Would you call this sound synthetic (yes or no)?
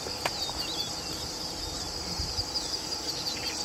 no